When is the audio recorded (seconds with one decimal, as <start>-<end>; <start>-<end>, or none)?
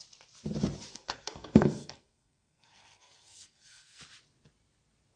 0.0-0.9; 4.0-5.2